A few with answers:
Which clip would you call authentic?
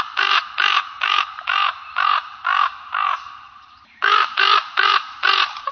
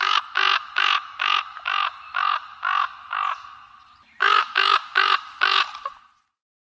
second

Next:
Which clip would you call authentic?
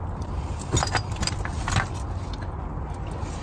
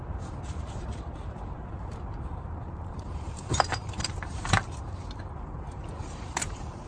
first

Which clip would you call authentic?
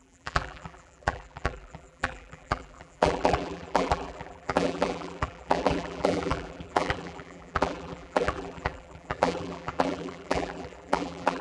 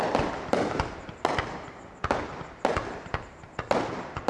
second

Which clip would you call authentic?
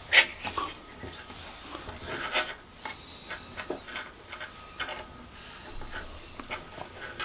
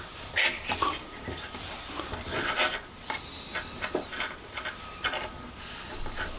first